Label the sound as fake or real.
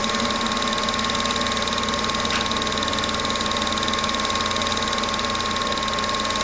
real